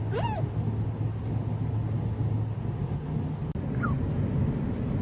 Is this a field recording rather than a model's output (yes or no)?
yes